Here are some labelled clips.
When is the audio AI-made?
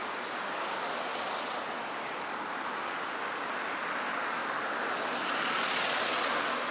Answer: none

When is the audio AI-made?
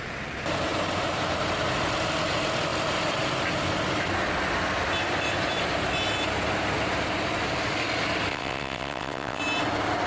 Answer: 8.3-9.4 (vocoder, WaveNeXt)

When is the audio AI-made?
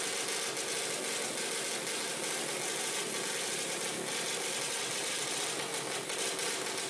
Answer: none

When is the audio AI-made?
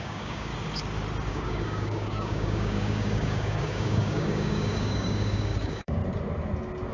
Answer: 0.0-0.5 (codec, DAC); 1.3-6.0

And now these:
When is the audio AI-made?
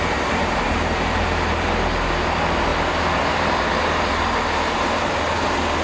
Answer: none